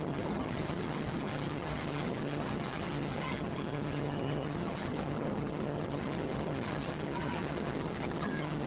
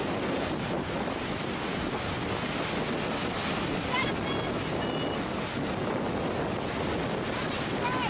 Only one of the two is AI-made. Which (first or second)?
first